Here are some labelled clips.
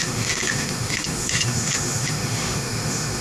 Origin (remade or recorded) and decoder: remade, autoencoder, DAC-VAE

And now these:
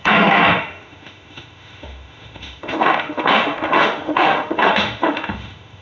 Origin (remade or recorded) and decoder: remade, autoencoder, DAC-VAE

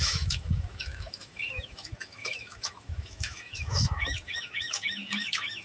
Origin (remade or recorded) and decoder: remade, autoencoder, DAC-VAE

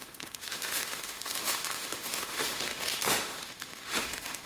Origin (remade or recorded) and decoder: remade, autoencoder, DAC-VAE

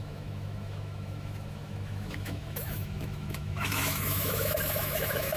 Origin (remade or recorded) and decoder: remade, autoencoder, DAC-VAE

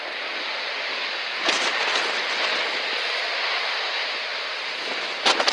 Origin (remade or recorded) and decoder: recorded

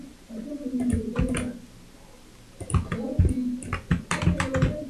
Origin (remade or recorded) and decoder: recorded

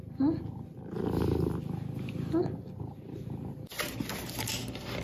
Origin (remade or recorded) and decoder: recorded